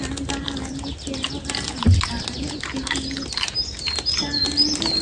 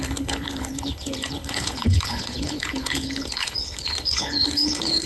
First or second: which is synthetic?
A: second